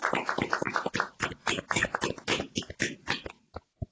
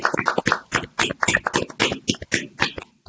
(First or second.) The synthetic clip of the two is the first